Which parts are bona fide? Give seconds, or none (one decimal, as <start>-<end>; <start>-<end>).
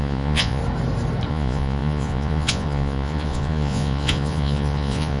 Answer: 0.6-1.3